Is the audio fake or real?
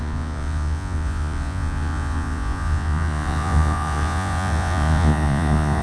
fake